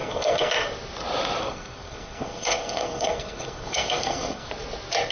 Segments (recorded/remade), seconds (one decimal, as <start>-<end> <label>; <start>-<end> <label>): 0.0-0.5 remade; 0.5-1.4 recorded; 1.4-4.5 remade; 4.5-5.1 recorded